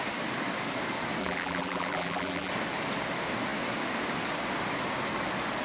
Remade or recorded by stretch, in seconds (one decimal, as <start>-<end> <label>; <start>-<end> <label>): 0.0-1.2 recorded; 1.2-2.5 remade; 2.5-5.6 recorded